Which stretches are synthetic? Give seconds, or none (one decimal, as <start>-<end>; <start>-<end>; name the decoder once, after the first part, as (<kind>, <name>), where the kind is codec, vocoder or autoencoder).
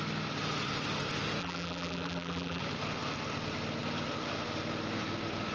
1.4-2.6 (vocoder, BigVGAN v2)